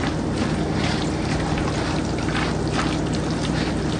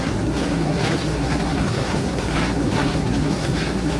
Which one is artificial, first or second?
second